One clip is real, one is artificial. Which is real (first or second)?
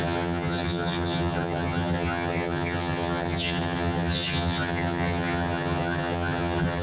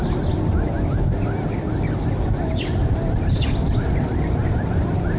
second